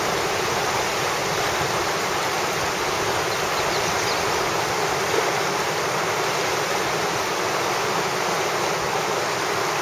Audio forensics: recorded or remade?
recorded